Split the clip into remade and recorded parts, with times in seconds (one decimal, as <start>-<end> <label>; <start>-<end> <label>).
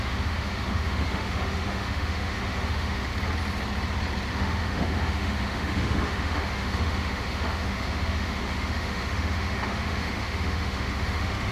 0.0-3.1 remade; 3.1-4.3 recorded; 4.3-11.5 remade